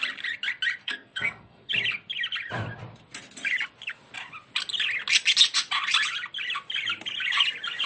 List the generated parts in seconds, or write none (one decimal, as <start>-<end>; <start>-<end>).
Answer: 0.8-1.7